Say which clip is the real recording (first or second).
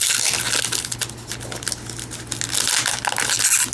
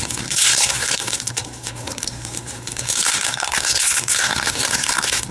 first